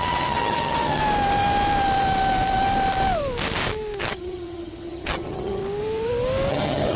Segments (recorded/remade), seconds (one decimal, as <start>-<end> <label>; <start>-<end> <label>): 0.0-1.0 remade; 1.0-4.0 recorded; 4.0-5.6 remade; 5.6-6.5 recorded; 6.5-7.0 remade